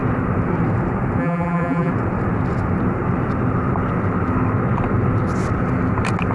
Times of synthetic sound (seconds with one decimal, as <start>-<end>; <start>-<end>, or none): 1.2-1.9

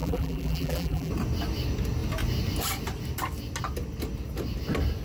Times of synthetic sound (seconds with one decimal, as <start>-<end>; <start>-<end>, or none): 0.0-1.1